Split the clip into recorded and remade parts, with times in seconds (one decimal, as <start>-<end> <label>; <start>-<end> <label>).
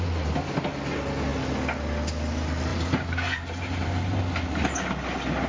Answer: 0.0-2.7 recorded; 2.7-4.2 remade; 4.2-5.5 recorded